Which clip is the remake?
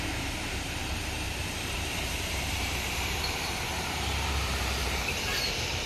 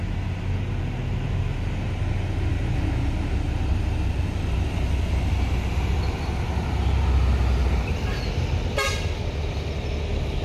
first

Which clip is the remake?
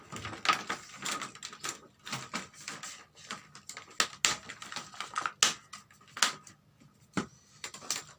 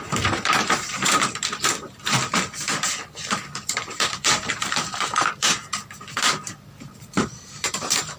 second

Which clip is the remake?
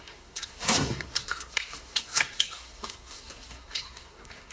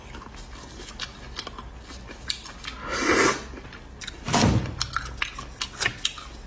first